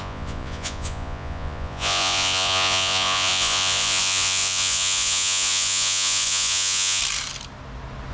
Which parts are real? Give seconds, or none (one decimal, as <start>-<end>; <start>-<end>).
7.0-8.1